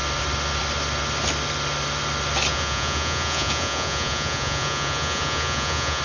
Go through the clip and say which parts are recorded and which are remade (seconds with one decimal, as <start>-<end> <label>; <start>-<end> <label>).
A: 0.0-2.5 recorded; 2.5-6.0 remade